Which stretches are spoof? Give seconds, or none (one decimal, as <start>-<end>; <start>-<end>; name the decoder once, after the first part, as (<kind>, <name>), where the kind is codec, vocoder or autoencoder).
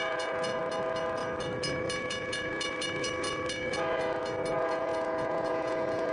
0.0-0.6 (vocoder, Vocos); 2.0-2.5; 4.5-6.1